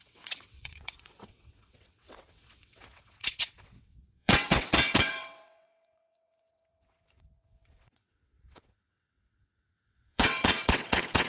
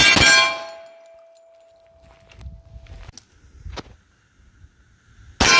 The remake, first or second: first